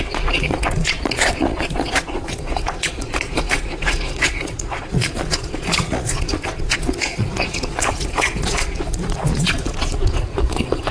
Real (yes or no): no